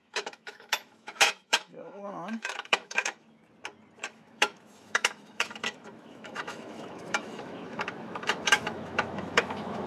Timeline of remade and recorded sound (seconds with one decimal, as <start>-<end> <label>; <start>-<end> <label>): 0.0-3.4 remade; 3.4-4.0 recorded; 4.0-9.9 remade